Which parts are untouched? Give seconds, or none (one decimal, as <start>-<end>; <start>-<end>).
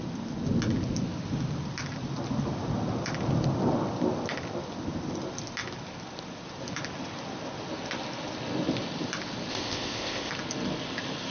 0.0-9.5; 10.3-11.3